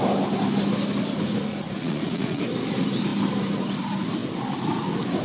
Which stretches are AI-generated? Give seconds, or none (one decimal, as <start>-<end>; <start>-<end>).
1.5-2.4